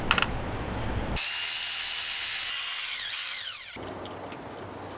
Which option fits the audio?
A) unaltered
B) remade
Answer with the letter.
A